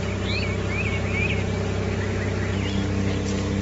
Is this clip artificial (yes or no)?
no